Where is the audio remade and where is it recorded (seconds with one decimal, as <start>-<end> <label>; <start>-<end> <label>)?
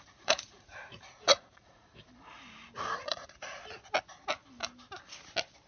0.0-2.0 remade; 2.0-3.0 recorded; 3.0-3.6 remade; 3.6-5.7 recorded